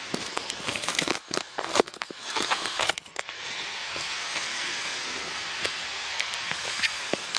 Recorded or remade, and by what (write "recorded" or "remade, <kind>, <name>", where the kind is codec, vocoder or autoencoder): remade, codec, SNAC